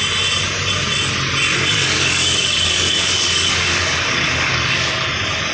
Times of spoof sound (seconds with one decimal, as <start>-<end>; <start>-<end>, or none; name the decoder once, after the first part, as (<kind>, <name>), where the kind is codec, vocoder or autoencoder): 1.6-4.9 (codec, DAC)